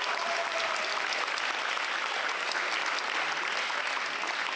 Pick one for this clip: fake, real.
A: real